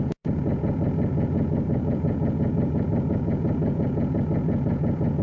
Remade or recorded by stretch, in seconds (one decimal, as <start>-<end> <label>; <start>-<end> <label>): 0.0-5.2 remade